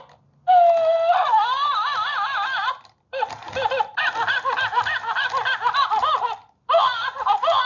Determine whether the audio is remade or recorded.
recorded